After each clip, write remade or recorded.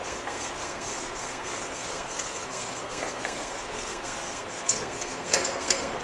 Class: remade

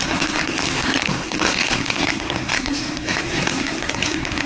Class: remade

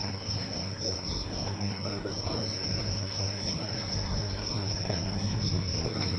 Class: remade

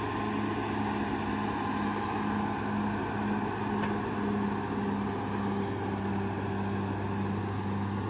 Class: recorded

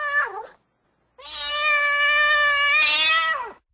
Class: recorded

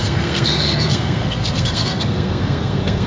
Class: remade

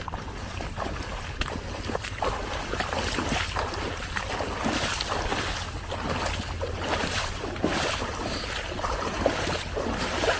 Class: recorded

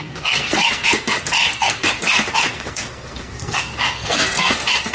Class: remade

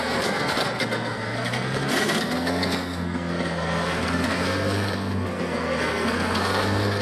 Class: remade